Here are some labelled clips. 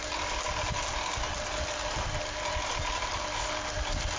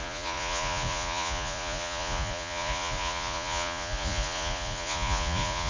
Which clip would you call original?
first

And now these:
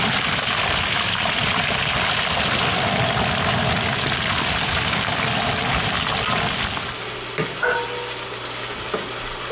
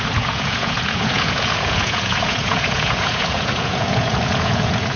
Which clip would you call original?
first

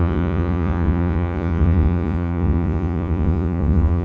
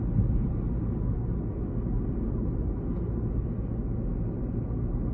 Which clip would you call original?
second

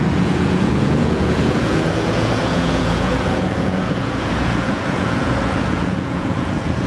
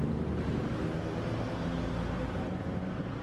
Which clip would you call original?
second